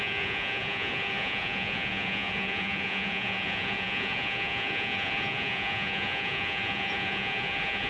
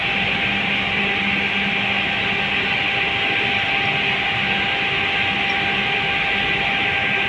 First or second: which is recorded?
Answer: second